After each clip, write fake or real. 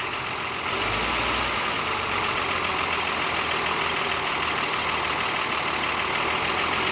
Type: real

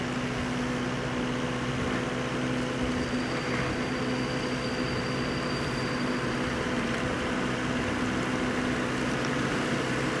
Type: real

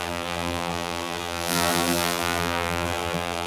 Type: fake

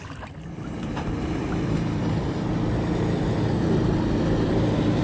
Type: fake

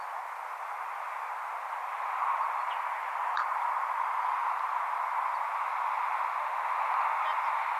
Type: real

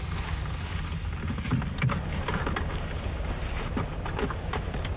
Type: real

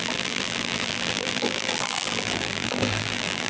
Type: fake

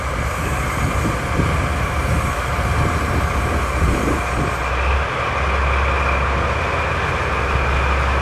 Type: real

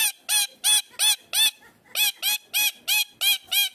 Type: real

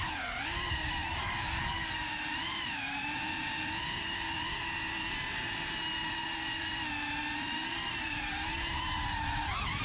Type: fake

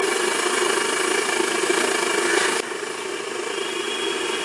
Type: real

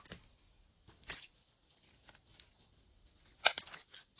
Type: real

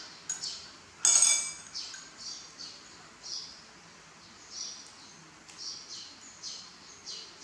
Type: real